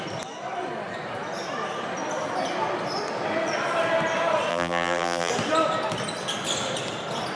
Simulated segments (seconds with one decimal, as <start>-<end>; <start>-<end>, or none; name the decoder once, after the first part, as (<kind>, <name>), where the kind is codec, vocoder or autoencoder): 4.5-5.3 (vocoder, BigVGAN v2)